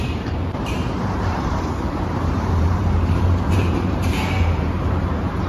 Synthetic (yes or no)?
yes